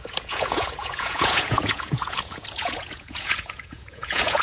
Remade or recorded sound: remade